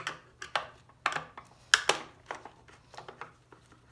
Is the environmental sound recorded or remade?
recorded